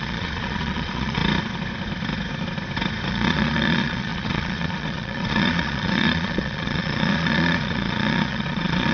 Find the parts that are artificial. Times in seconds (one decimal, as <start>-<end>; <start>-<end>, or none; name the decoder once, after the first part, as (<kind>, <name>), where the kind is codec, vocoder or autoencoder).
0.0-1.2 (vocoder, Vocos); 3.1-8.9